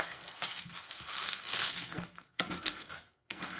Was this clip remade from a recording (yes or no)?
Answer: yes